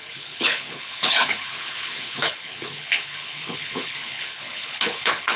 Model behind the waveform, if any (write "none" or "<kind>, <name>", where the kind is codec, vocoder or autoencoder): codec, HILCodec